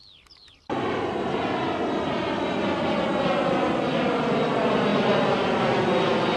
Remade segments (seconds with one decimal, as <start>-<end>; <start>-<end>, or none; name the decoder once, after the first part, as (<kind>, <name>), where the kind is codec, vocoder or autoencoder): none